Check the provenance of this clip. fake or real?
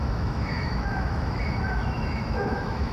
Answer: fake